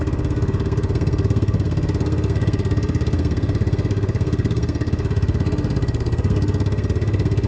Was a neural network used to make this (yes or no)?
yes